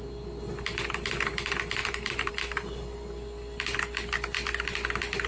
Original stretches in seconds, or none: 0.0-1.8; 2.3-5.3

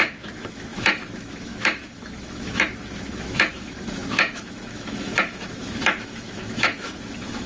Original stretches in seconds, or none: none

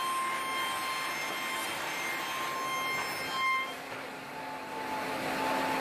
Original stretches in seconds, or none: 0.0-1.6; 2.1-5.8